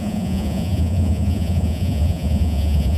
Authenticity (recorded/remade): remade